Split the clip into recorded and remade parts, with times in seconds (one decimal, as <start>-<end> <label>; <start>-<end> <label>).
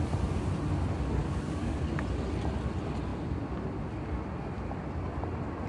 0.0-1.2 recorded; 1.2-1.8 remade; 1.8-5.7 recorded